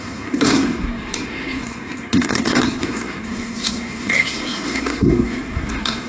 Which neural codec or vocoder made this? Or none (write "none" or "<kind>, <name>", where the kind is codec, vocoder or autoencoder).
codec, SNAC